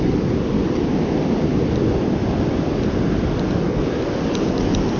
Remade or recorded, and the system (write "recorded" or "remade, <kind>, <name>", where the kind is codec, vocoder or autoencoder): recorded